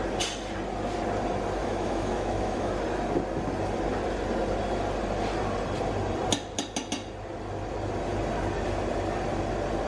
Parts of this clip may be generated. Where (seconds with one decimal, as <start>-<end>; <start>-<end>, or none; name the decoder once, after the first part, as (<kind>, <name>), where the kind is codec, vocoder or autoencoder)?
1.6-2.7 (autoencoder, DAC-VAE)